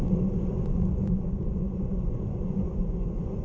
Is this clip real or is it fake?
fake